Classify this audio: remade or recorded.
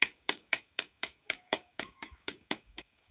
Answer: remade